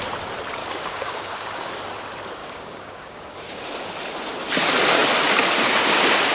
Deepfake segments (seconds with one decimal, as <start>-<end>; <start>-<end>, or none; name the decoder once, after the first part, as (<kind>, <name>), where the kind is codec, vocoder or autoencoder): 0.6-1.7 (codec, DAC); 2.4-3.6